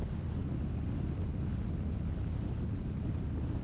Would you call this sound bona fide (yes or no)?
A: yes